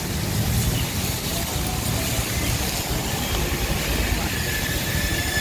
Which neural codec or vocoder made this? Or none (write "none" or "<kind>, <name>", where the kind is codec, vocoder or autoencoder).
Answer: none